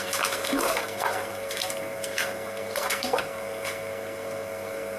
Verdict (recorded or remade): remade